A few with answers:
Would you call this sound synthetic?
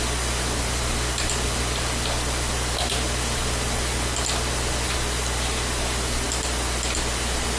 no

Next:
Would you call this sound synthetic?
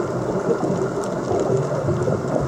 no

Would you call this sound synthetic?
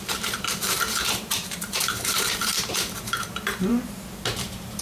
yes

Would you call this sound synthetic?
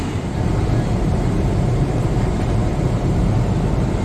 yes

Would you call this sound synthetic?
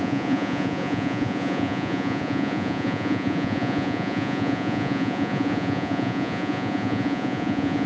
yes